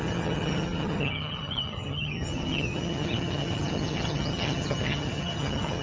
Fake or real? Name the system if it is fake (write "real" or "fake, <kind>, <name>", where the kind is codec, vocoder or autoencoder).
fake, vocoder, HiFi-GAN